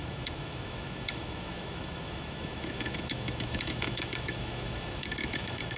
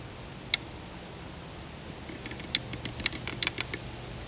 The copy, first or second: first